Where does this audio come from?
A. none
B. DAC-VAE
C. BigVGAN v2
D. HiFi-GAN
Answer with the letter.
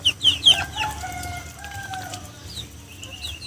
A